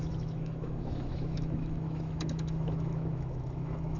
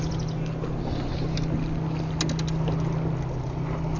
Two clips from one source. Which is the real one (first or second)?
second